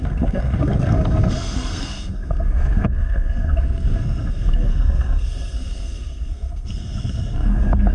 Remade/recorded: remade